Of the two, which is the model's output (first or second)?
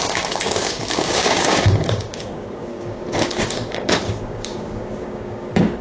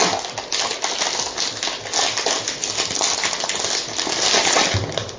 first